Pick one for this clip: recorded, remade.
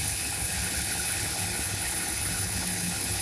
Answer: remade